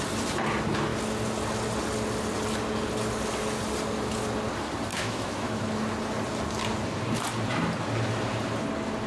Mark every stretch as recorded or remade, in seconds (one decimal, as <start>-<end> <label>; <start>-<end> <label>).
0.0-4.9 recorded; 4.9-5.6 remade; 5.6-9.1 recorded

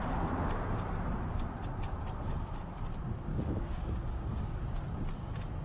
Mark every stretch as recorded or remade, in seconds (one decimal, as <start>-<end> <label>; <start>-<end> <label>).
0.0-3.3 recorded; 3.3-4.6 remade; 4.6-5.6 recorded

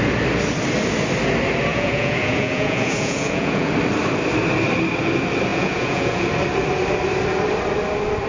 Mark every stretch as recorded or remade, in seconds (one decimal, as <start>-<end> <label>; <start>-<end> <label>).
0.0-1.7 recorded; 1.7-3.7 remade; 3.7-5.5 recorded; 5.5-6.3 remade; 6.3-8.3 recorded

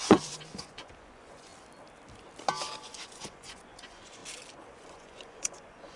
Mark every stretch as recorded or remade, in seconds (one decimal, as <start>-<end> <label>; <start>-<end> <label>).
0.0-1.5 remade; 1.5-2.8 recorded; 2.8-4.2 remade; 4.2-4.7 recorded; 4.7-6.0 remade

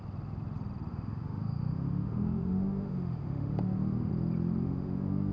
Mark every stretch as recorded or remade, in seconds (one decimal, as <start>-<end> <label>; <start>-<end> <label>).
0.0-0.9 recorded; 0.9-4.1 remade; 4.1-4.6 recorded; 4.6-5.3 remade

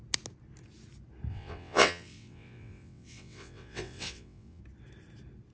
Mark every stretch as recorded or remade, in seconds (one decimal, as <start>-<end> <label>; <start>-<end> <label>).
0.0-1.3 recorded; 1.3-4.6 remade; 4.6-5.5 recorded

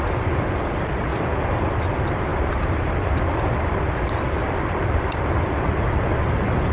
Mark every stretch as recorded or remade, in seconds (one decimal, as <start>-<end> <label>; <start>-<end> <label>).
0.0-1.1 recorded; 1.1-1.7 remade; 1.7-2.3 recorded; 2.3-5.9 remade; 5.9-6.7 recorded